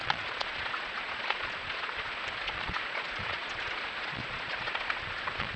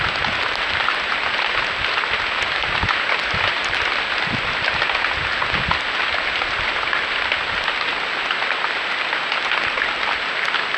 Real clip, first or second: second